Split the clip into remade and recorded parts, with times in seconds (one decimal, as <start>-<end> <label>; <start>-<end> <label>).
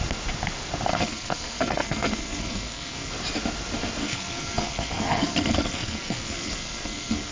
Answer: 0.0-0.9 recorded; 0.9-3.1 remade; 3.1-4.0 recorded; 4.0-7.3 remade